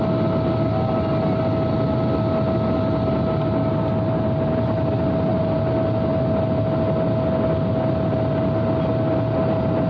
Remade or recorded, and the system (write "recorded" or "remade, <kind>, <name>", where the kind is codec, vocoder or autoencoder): recorded